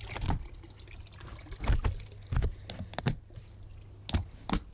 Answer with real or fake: real